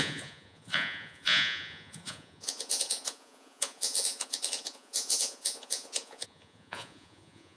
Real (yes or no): no